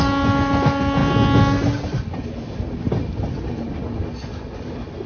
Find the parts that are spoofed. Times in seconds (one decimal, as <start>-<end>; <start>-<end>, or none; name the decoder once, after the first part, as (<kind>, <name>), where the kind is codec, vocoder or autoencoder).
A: none